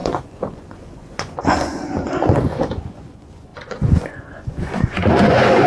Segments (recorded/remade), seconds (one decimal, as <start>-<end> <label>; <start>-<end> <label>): 0.0-5.7 remade